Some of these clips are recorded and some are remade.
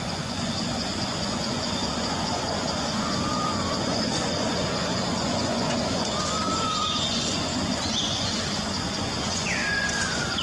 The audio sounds remade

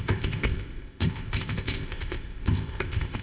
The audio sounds remade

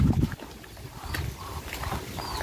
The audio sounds recorded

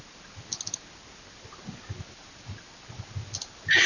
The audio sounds recorded